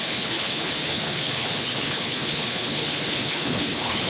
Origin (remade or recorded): remade